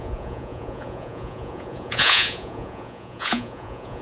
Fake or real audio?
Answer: fake